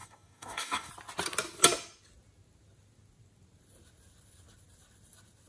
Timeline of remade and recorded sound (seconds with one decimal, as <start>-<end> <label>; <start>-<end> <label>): 0.0-0.9 remade; 0.9-5.5 recorded